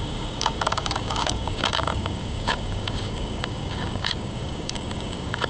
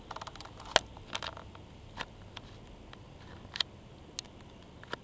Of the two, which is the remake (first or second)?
first